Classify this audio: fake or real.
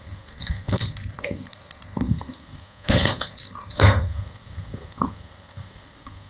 fake